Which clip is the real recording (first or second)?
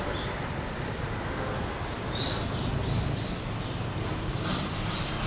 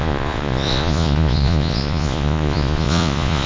first